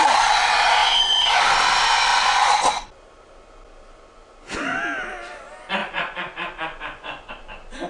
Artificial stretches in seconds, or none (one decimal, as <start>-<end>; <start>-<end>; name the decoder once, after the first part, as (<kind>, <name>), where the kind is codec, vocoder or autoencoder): 2.1-2.8 (vocoder, Vocos); 5.8-7.3